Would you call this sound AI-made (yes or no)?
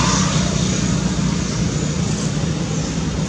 no